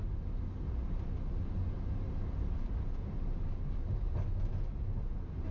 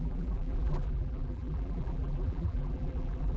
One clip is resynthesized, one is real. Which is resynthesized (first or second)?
second